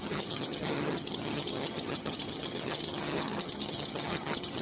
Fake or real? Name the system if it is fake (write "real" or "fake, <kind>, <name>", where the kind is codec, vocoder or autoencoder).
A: fake, vocoder, HiFi-GAN